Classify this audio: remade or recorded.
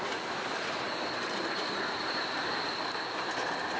remade